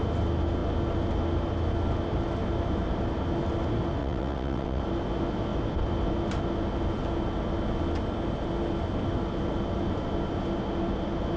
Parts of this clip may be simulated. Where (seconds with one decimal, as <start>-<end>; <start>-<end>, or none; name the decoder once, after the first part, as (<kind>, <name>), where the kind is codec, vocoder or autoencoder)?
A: 4.0-4.8 (vocoder, WaveNeXt)